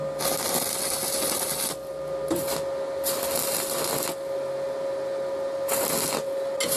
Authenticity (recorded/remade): recorded